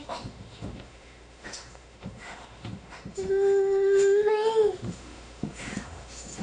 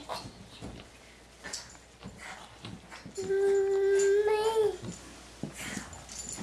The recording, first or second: second